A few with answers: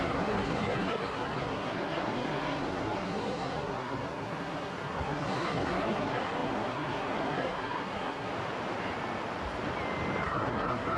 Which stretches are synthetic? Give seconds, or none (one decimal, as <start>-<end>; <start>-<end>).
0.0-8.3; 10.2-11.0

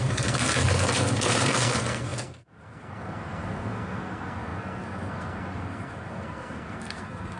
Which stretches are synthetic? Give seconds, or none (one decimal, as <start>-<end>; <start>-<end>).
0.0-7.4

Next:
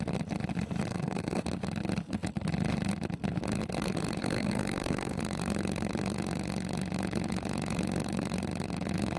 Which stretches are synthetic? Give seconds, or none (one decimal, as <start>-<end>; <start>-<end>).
0.9-1.4; 4.2-5.2

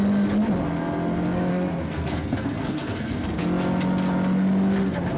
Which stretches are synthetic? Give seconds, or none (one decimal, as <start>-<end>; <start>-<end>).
1.5-3.4